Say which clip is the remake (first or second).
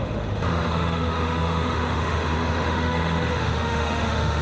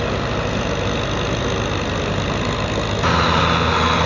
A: first